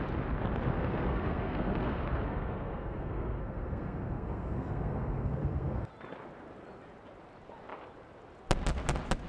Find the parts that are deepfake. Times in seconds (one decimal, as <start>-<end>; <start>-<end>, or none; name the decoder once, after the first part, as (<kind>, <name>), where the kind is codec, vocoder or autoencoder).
0.7-5.9 (codec, SNAC)